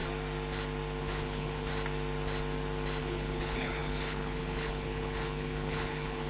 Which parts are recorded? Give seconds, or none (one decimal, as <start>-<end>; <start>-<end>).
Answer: 0.0-1.0; 1.7-3.0